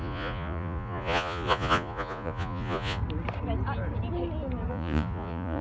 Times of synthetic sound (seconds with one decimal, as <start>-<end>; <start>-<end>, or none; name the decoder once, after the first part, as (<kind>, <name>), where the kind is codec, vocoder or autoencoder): 0.0-3.0 (vocoder, Vocos); 4.7-5.6